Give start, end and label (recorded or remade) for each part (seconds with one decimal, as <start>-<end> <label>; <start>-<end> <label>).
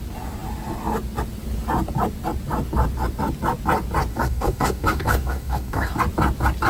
0.0-4.1 recorded; 4.1-5.9 remade; 5.9-6.7 recorded